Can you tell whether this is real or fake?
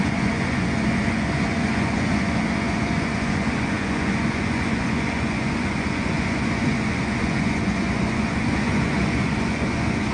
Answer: fake